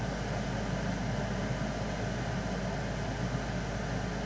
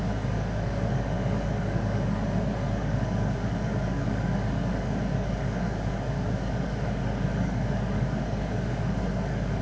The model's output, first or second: second